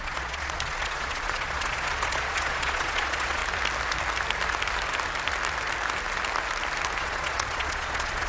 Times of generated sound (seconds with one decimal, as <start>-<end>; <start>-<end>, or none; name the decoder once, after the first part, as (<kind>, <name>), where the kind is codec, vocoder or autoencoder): 0.0-3.4 (vocoder, Vocos); 7.0-8.3

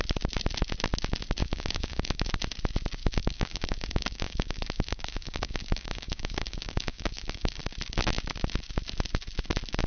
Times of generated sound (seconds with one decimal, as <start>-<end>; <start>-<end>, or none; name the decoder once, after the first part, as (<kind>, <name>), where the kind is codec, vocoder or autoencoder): 1.4-2.3 (codec, DAC); 3.0-7.6

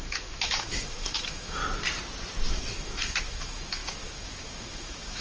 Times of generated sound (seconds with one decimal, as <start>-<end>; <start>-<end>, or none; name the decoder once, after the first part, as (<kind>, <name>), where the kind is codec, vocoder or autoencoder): 0.0-1.6 (autoencoder, DAC-VAE); 2.5-5.2

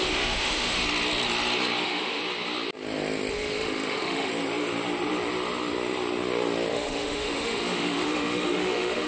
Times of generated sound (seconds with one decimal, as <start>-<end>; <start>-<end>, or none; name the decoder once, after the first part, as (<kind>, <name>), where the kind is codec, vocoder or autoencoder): 0.0-0.8 (autoencoder, DAC-VAE); 1.8-2.2; 3.3-4.3; 6.7-9.1

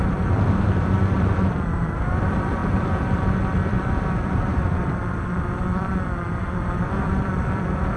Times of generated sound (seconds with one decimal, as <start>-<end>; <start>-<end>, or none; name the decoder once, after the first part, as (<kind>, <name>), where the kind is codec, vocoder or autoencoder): 0.0-8.0 (vocoder, BigVGAN v2)

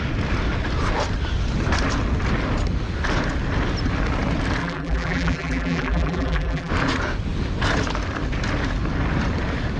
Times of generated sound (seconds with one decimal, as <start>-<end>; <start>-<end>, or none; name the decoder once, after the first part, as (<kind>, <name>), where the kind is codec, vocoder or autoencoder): 4.6-6.7 (vocoder, BigVGAN v2)

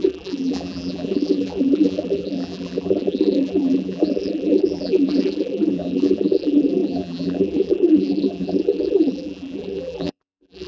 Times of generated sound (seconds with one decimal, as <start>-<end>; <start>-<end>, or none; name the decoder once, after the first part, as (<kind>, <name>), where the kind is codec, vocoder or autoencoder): 0.0-10.7 (vocoder, BigVGAN v2)

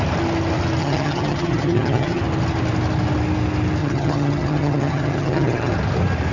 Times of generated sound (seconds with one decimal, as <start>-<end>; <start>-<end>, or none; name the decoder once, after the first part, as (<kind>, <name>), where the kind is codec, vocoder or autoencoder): 0.8-2.2 (vocoder, HiFi-GAN); 3.8-5.7